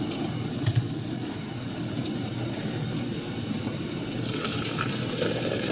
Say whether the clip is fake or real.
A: fake